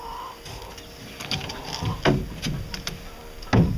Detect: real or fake real